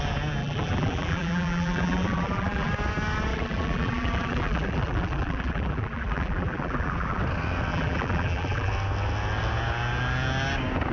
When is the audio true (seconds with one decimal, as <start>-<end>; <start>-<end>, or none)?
0.0-0.4; 2.7-3.3; 7.2-7.7; 8.7-10.9

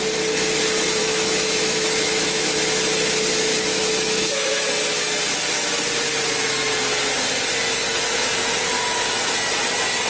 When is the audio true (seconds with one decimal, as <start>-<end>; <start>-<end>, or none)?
0.0-1.0; 2.6-3.5; 4.7-10.1

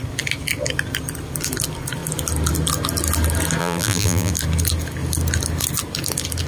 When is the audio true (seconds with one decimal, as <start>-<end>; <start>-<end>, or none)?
0.0-3.6; 4.3-6.5

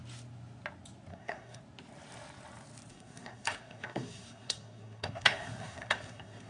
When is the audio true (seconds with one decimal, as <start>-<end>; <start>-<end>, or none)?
0.0-1.1; 1.6-2.9

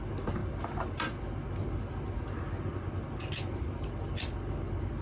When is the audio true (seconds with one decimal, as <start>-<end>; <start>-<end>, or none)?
0.0-5.0